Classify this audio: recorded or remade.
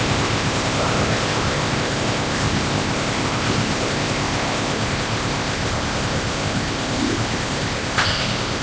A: remade